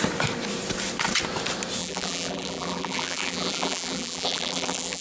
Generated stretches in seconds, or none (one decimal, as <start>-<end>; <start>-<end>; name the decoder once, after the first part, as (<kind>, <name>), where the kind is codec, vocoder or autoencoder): 1.8-5.0 (vocoder, BigVGAN v2)